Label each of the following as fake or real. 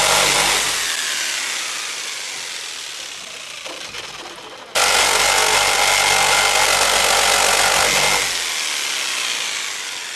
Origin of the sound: real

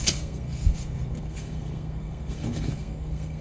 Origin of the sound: fake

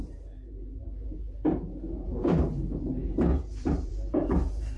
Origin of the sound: fake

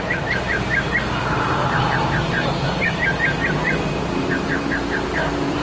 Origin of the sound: fake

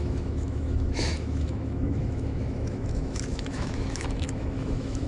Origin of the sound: fake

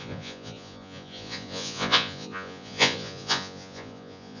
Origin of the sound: fake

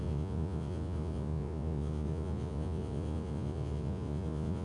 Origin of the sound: fake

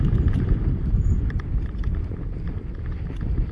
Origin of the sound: fake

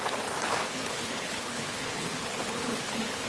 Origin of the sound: fake